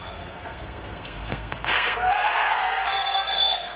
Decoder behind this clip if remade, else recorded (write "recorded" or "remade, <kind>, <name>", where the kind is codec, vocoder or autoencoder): remade, codec, SNAC